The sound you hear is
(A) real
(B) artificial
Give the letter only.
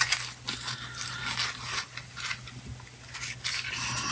A